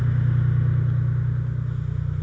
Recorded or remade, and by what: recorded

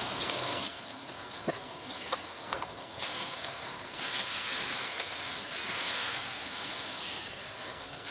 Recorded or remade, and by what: remade, codec, SNAC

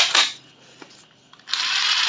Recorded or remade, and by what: recorded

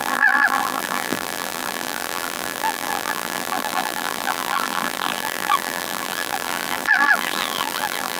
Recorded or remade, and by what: remade, vocoder, BigVGAN v2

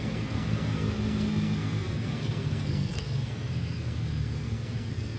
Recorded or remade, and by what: remade, codec, SNAC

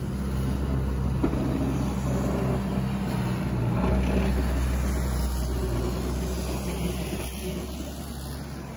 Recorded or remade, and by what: recorded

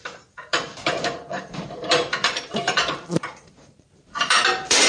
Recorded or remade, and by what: remade, vocoder, BigVGAN v2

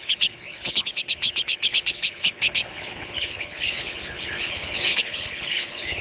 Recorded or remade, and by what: remade, codec, HILCodec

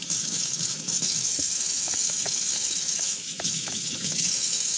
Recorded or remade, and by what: remade, autoencoder, DAC-VAE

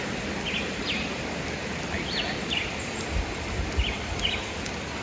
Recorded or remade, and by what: recorded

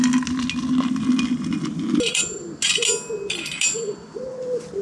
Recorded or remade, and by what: recorded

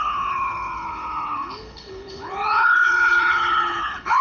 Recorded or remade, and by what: remade, codec, HILCodec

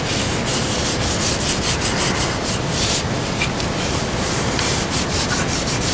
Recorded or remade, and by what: recorded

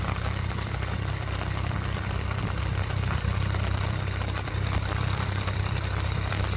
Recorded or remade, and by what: remade, vocoder, BigVGAN v2